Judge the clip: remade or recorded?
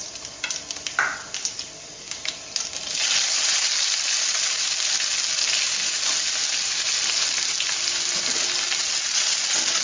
recorded